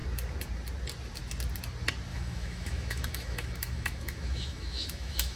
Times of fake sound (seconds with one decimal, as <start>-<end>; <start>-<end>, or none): 2.1-5.4